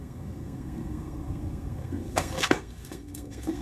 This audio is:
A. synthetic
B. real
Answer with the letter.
A